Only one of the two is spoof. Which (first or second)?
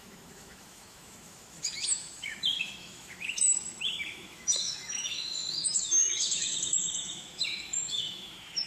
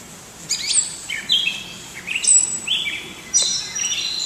first